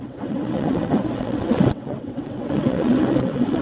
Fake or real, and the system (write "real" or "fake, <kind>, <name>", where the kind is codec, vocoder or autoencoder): fake, vocoder, WaveNeXt